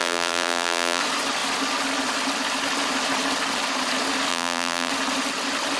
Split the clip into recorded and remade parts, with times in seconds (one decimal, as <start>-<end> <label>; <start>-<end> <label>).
0.0-1.0 remade; 1.0-4.3 recorded; 4.3-4.9 remade; 4.9-5.8 recorded